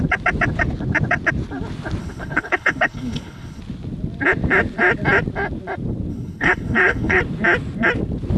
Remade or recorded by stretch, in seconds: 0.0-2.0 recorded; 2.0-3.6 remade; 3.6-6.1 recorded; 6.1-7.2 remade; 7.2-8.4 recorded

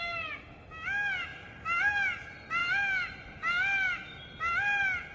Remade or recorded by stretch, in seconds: 0.0-5.1 recorded

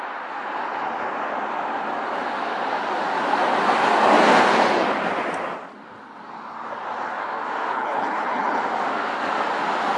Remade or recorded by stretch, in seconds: 0.0-7.7 recorded; 7.7-8.6 remade; 8.6-10.0 recorded

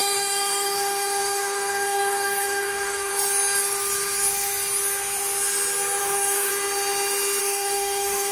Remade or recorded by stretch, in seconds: 0.0-3.1 remade; 3.1-6.0 recorded; 6.0-6.5 remade; 6.5-7.4 recorded; 7.4-8.3 remade

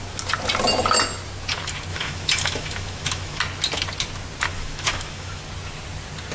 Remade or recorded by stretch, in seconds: 0.0-1.9 recorded; 1.9-3.4 remade; 3.4-4.5 recorded; 4.5-5.4 remade; 5.4-6.3 recorded